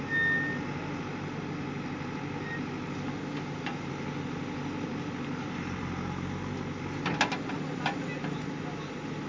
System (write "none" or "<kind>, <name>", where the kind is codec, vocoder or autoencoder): none